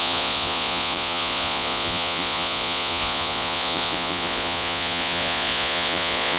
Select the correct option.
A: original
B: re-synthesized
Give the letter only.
B